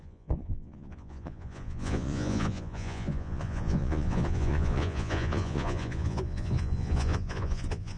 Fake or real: fake